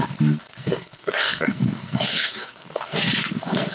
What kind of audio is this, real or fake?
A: fake